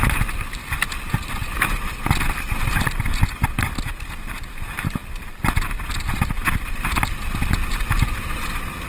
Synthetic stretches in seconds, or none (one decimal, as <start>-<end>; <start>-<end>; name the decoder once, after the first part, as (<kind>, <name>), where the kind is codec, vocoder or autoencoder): none